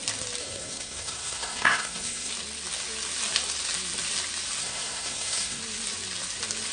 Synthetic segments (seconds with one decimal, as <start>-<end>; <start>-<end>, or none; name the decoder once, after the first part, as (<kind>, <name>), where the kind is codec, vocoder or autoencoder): 0.4-2.3 (codec, SNAC); 4.6-5.6